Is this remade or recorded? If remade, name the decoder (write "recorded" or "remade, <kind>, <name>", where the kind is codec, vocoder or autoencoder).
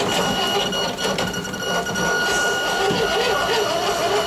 recorded